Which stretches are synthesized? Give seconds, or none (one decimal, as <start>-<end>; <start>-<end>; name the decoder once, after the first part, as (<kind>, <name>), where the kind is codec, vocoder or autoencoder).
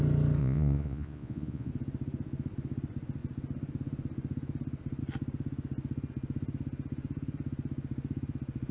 0.4-1.7 (vocoder, Vocos)